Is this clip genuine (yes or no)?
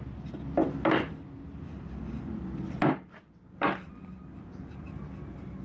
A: yes